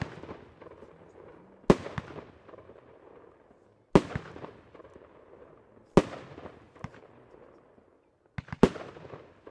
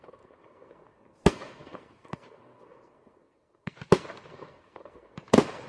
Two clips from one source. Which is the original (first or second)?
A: first